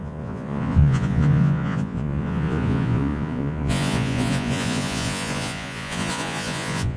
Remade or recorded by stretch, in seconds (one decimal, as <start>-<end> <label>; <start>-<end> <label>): 0.0-7.0 remade

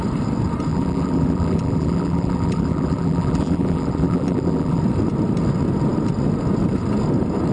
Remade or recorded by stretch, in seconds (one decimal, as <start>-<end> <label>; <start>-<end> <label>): 0.0-0.7 recorded; 0.7-4.8 remade; 4.8-7.5 recorded

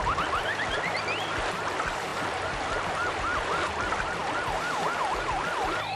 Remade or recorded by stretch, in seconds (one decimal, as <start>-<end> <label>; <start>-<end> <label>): 0.0-6.0 recorded

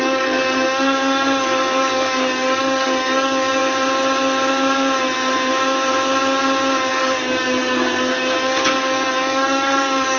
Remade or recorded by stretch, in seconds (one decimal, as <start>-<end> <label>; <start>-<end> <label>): 0.0-3.6 remade; 3.6-6.9 recorded; 6.9-10.2 remade

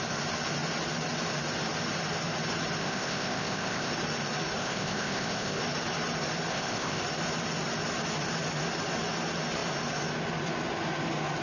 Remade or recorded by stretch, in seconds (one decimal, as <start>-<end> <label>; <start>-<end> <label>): 0.0-2.8 recorded; 2.8-3.9 remade; 3.9-4.6 recorded; 4.6-5.6 remade; 5.6-6.5 recorded; 6.5-7.0 remade; 7.0-11.4 recorded